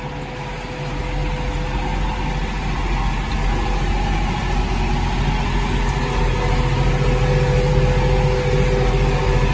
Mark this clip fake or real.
real